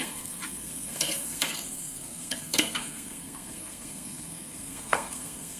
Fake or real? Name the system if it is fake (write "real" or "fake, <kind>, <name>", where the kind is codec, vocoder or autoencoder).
fake, codec, SNAC